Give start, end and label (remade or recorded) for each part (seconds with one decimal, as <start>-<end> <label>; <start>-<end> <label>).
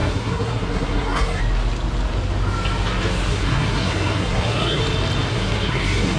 0.0-1.4 remade; 1.4-3.3 recorded; 3.3-4.8 remade; 4.8-5.3 recorded; 5.3-6.2 remade